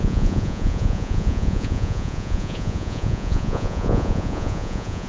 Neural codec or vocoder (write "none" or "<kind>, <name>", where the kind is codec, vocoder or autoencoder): vocoder, Vocos